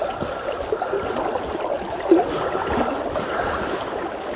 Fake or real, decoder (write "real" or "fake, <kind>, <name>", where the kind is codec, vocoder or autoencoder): real